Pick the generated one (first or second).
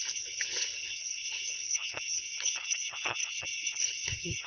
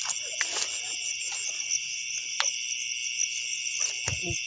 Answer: first